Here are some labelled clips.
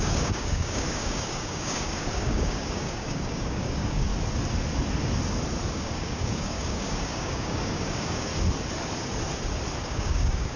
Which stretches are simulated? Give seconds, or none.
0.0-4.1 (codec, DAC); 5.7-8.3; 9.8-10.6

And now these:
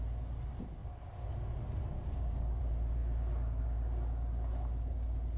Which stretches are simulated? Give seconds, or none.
1.9-2.6 (codec, DAC)

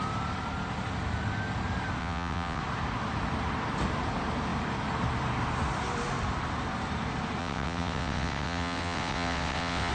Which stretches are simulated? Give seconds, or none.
2.0-2.6 (vocoder, WaveNeXt); 7.4-9.9